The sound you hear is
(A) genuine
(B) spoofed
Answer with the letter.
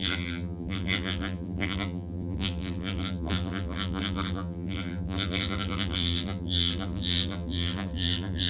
B